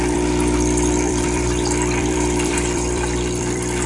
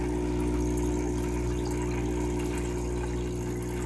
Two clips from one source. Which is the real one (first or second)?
second